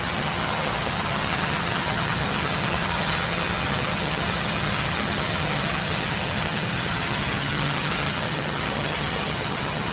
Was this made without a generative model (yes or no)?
no